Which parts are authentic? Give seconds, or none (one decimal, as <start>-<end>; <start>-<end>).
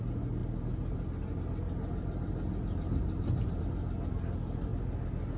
0.0-5.4